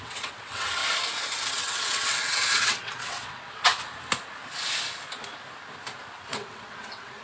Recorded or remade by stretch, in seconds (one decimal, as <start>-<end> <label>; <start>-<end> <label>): 0.0-0.8 remade; 0.8-1.5 recorded; 1.5-3.6 remade; 3.6-6.3 recorded; 6.3-7.2 remade